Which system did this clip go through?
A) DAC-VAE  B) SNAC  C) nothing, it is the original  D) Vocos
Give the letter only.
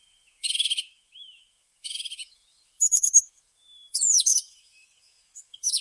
A